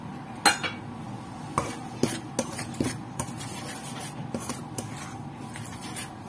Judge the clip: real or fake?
real